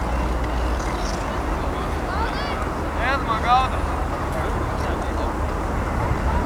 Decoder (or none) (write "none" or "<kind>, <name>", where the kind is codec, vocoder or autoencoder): none